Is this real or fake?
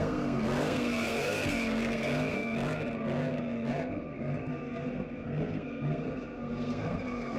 fake